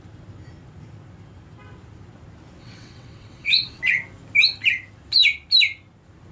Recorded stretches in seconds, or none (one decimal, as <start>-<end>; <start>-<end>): 0.0-2.6; 3.8-6.3